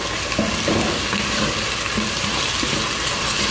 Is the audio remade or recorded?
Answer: recorded